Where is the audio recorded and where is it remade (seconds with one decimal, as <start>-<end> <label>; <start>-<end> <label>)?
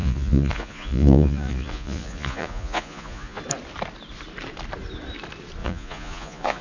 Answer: 0.0-3.4 remade; 3.4-5.6 recorded; 5.6-6.6 remade